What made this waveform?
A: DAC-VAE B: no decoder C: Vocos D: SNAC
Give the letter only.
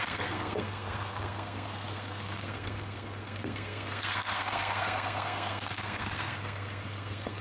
D